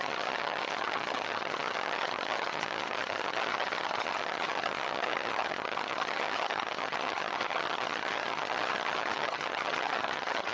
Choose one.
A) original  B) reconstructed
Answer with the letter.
B